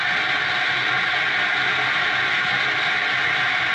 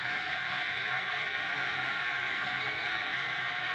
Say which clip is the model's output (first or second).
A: second